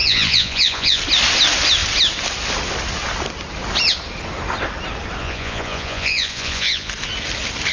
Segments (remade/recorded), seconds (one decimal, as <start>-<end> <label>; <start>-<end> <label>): 0.0-1.0 remade; 1.0-5.2 recorded; 5.2-6.9 remade; 6.9-7.7 recorded